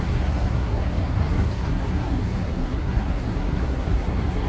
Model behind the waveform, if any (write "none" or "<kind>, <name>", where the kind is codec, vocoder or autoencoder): codec, SNAC